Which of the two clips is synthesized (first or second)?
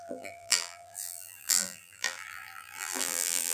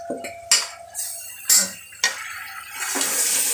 first